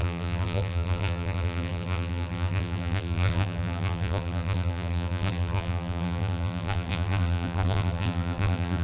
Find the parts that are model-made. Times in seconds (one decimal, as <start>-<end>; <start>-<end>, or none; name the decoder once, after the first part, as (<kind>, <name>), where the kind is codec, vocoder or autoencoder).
0.0-8.8 (vocoder, BigVGAN v2)